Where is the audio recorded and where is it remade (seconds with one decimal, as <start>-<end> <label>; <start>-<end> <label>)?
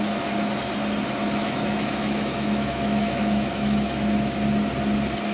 0.0-1.2 recorded; 1.2-4.4 remade; 4.4-5.3 recorded